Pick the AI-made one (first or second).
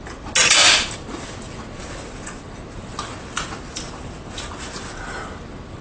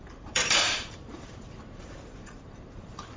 second